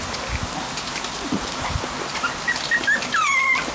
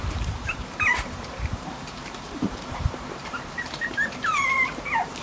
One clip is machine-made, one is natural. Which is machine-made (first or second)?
second